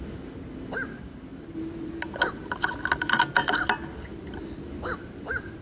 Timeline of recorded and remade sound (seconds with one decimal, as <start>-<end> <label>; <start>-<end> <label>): 0.0-1.3 recorded; 1.3-1.9 remade; 1.9-2.4 recorded; 2.4-3.2 remade; 3.2-4.1 recorded; 4.1-5.6 remade